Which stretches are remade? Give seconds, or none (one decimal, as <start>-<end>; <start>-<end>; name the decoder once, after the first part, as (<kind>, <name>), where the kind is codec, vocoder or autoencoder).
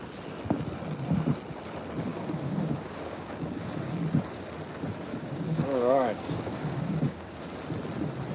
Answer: 2.1-3.7 (codec, DAC); 5.1-7.4